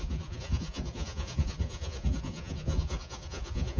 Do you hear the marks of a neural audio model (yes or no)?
yes